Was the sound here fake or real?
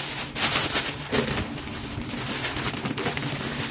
real